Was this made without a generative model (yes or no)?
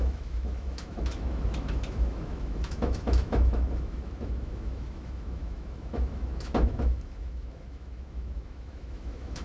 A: no